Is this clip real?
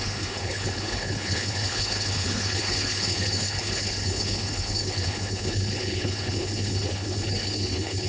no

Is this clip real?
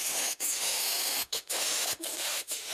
no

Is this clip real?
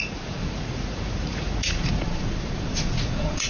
no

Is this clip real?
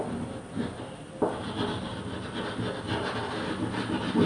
yes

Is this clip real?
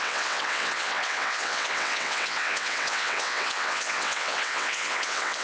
no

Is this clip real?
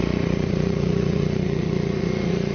no